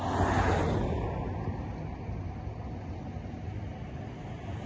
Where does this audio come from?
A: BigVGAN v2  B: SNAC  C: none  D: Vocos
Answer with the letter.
C